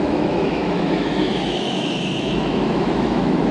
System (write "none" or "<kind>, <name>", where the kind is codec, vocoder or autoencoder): autoencoder, DAC-VAE